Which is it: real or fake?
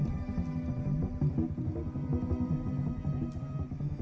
real